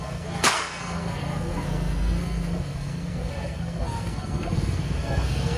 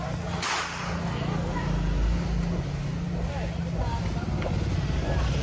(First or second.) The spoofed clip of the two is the first